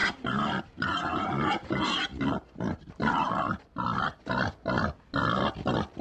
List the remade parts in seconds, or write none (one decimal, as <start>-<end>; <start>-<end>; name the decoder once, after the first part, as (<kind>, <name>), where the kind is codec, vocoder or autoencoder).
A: 0.0-2.0 (vocoder, BigVGAN v2); 3.0-3.5